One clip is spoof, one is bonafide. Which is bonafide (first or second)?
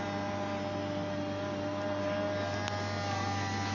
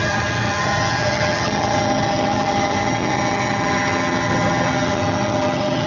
first